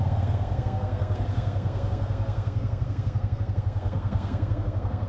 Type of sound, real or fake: fake